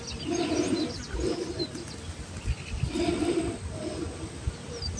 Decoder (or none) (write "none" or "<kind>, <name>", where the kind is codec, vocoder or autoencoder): none